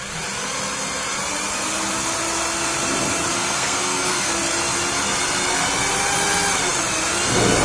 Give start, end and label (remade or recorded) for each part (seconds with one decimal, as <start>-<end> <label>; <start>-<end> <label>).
0.0-3.3 recorded; 3.3-4.3 remade; 4.3-7.6 recorded